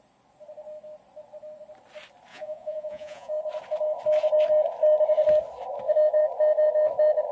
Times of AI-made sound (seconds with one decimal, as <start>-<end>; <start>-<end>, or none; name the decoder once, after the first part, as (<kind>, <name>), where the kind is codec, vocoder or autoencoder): 2.3-3.3 (vocoder, Vocos)